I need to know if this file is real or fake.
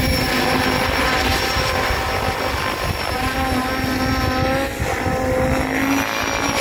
real